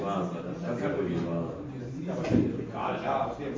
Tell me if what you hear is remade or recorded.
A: recorded